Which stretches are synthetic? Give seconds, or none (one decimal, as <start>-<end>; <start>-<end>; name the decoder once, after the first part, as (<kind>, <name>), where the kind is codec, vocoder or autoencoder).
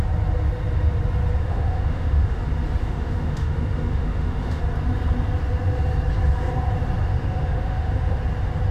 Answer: 1.4-2.4 (autoencoder, DAC-VAE); 2.8-4.6; 7.1-8.2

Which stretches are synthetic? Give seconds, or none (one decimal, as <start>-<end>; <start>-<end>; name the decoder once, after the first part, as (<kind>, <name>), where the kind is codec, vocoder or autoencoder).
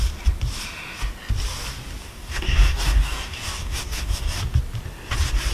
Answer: 2.0-4.4 (codec, DAC)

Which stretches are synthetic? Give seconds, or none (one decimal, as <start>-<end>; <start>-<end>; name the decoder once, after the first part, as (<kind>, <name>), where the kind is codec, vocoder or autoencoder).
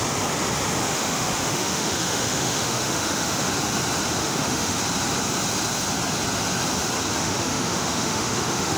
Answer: 0.8-3.5 (autoencoder, DAC-VAE); 4.2-4.8; 7.2-8.8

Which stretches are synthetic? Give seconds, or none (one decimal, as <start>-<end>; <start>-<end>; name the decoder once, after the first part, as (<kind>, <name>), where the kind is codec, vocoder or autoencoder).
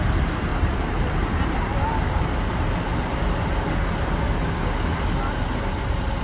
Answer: 0.5-3.7 (vocoder, BigVGAN v2)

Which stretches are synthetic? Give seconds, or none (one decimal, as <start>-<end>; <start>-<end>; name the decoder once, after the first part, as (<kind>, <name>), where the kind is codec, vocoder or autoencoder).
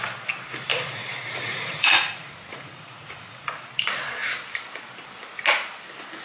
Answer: 0.7-3.7 (vocoder, Vocos)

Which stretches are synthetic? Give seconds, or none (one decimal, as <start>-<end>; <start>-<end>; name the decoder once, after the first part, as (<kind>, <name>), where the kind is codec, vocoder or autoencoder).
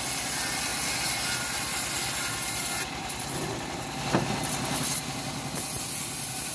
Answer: none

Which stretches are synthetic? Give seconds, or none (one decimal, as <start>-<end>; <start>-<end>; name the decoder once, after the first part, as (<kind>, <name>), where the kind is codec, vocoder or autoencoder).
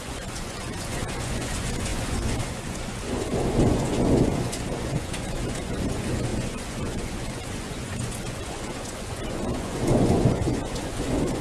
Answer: 0.0-11.4 (vocoder, Vocos)